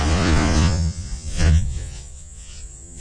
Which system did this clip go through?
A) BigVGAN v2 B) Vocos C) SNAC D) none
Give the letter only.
B